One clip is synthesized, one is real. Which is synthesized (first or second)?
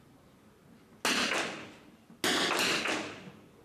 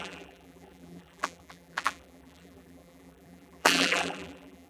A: second